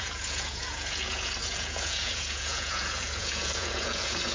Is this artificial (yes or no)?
yes